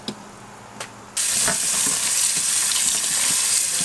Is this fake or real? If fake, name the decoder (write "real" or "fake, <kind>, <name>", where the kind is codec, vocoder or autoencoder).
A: real